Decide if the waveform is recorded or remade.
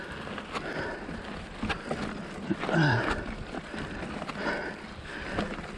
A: recorded